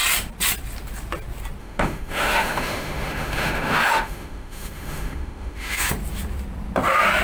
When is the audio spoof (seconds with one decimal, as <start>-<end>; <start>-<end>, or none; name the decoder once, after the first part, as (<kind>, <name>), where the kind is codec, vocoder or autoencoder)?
1.6-5.9 (autoencoder, DAC-VAE)